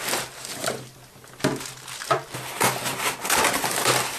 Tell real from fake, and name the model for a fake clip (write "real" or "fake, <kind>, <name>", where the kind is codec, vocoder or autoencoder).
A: real